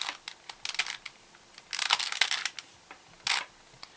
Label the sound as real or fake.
real